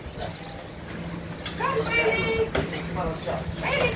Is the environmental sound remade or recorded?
recorded